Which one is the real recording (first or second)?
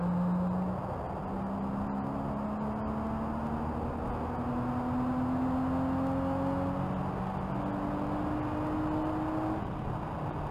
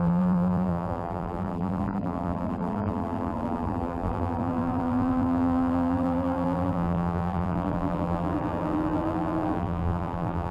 first